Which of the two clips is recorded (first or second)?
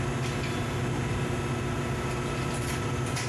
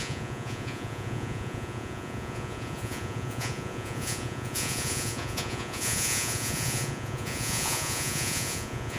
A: first